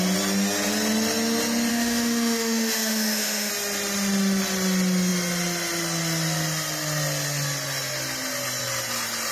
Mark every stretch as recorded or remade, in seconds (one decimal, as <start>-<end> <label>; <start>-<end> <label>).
0.0-1.7 recorded; 1.7-3.5 remade; 3.5-9.3 recorded